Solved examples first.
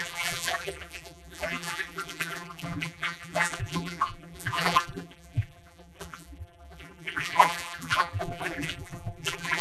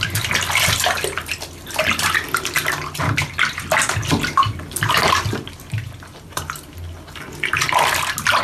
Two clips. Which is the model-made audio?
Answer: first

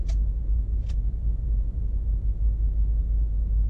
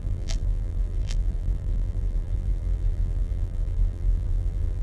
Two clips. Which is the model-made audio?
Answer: second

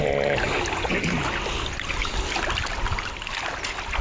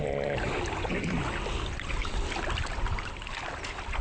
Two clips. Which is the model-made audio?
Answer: second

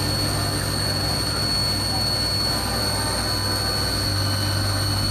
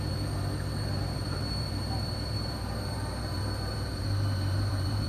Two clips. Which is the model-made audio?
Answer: second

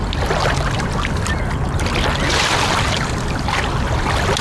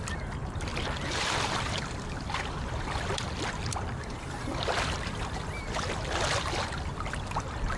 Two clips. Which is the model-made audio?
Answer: second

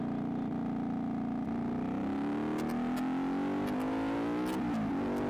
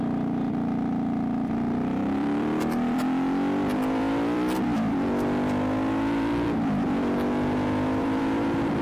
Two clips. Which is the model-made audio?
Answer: second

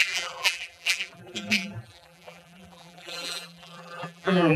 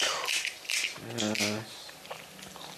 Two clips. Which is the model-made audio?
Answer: first